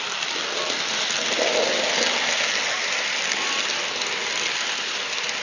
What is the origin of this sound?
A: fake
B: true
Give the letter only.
B